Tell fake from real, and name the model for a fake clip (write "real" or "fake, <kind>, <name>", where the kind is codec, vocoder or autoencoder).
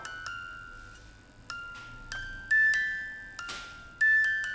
real